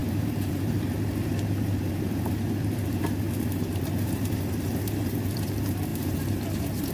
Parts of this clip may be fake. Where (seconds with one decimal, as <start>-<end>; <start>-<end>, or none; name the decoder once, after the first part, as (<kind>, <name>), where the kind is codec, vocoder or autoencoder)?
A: 0.0-6.9 (vocoder, BigVGAN v2)